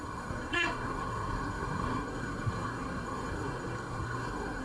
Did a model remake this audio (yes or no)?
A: yes